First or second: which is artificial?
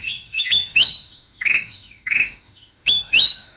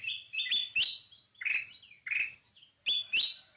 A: first